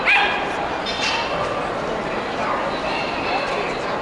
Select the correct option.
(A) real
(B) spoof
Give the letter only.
A